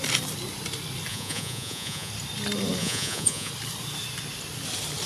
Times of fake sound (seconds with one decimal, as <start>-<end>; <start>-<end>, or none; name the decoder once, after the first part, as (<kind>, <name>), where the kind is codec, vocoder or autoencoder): 1.1-2.1 (vocoder, Vocos); 2.8-3.5